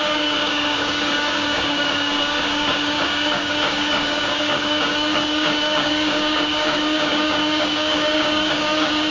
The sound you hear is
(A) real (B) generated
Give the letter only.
B